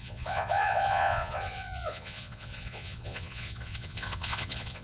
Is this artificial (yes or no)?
yes